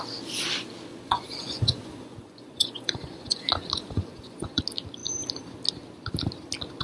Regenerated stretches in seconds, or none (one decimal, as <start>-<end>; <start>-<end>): 0.9-4.6